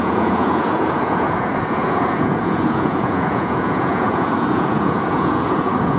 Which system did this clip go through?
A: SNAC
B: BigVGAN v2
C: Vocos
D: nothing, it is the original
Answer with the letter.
C